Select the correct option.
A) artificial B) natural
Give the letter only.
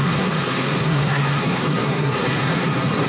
A